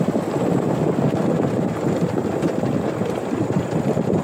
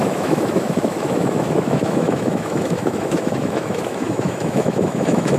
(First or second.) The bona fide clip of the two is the first